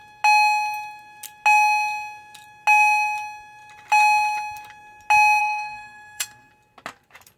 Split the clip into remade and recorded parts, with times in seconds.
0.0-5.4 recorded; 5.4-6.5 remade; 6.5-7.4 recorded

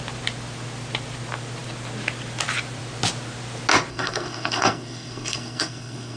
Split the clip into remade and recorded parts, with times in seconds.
0.0-3.9 recorded; 3.9-6.2 remade

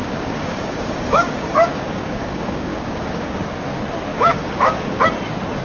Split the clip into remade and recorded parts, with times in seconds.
0.0-3.4 remade; 3.4-4.1 recorded; 4.1-5.0 remade; 5.0-5.6 recorded

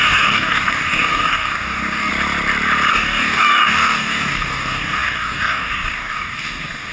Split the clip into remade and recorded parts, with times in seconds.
0.0-2.1 remade; 2.1-2.9 recorded; 2.9-6.9 remade

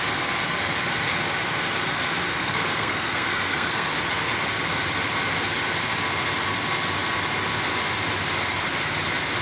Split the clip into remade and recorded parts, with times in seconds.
0.0-2.3 recorded; 2.3-3.9 remade; 3.9-9.4 recorded